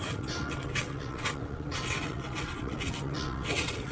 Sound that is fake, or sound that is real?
fake